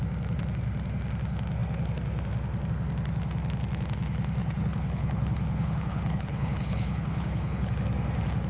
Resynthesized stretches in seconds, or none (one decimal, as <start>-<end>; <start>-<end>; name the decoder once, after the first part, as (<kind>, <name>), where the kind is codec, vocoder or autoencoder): 4.4-7.7 (codec, HILCodec)